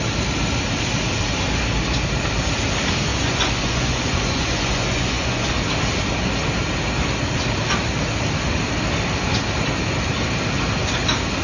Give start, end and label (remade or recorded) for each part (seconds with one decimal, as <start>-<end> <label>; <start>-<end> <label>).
0.0-3.1 recorded; 3.1-5.5 remade; 5.5-11.4 recorded